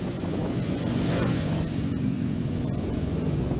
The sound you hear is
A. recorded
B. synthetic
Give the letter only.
B